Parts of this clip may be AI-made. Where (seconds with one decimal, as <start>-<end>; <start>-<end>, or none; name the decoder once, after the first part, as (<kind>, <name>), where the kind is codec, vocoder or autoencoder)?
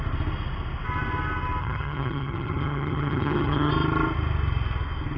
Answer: 1.6-3.7 (vocoder, HiFi-GAN)